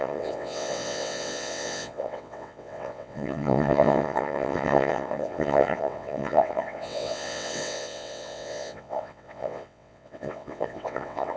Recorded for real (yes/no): no